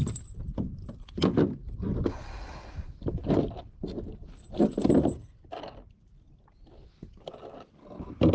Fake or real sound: real